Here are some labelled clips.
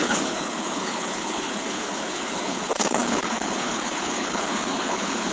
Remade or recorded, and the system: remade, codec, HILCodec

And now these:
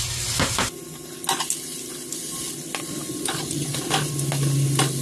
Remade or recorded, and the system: recorded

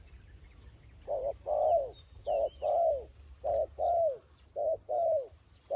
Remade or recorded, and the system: recorded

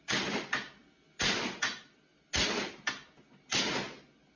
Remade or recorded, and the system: recorded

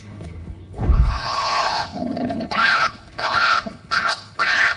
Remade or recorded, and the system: remade, codec, HILCodec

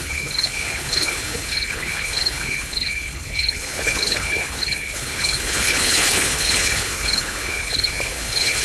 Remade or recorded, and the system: remade, codec, HILCodec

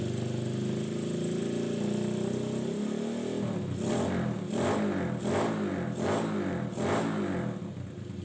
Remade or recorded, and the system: recorded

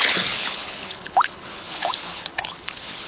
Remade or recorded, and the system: remade, codec, HILCodec